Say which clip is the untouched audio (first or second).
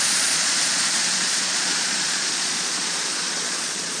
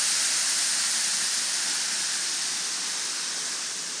second